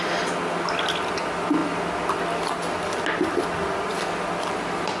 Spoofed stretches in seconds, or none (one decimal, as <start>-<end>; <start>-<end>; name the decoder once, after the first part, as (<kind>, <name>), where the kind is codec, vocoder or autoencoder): none